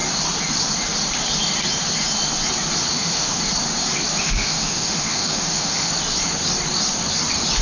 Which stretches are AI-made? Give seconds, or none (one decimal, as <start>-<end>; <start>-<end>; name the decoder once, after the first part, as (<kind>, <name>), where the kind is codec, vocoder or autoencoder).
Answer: 2.9-3.4 (autoencoder, DAC-VAE); 4.2-5.9